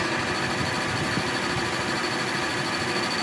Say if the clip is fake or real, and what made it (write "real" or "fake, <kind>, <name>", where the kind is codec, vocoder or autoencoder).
real